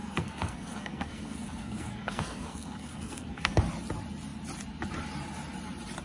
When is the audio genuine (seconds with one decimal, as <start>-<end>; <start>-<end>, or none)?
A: 3.6-6.0